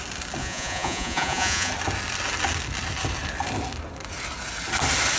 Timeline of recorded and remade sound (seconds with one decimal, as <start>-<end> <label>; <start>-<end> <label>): 0.0-0.4 recorded; 0.4-1.7 remade; 1.7-5.2 recorded